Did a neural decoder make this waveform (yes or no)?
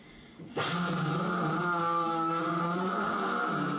no